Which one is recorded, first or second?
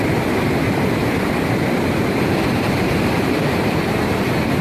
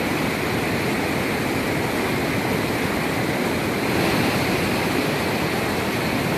second